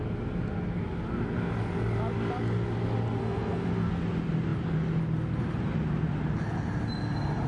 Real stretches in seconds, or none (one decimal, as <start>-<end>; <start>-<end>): 0.0-3.2; 3.9-7.5